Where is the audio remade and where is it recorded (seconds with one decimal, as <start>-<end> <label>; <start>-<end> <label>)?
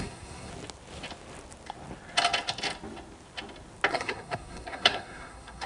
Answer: 0.0-0.5 remade; 0.5-3.9 recorded; 3.9-5.7 remade